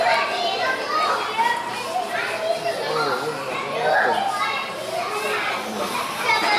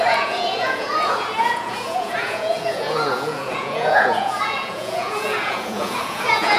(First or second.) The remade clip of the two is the second